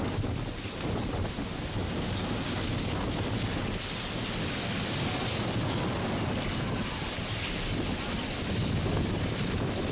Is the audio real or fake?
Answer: real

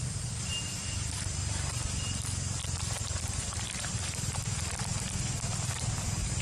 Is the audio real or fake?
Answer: real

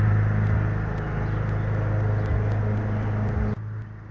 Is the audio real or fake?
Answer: real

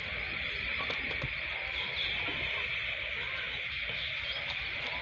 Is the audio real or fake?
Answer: real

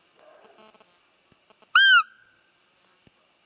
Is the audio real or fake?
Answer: real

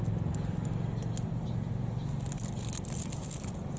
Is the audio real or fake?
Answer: real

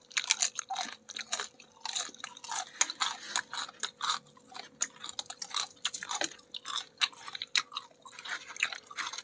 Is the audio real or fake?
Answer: real